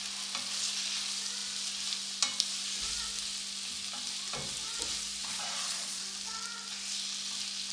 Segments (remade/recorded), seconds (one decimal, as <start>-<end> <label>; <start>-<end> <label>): 0.0-5.2 recorded; 5.2-6.0 remade; 6.0-7.7 recorded